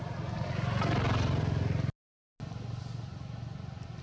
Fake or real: real